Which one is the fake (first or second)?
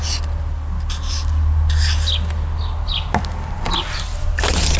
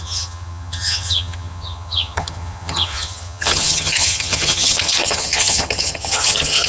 second